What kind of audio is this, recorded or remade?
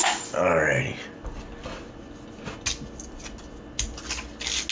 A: recorded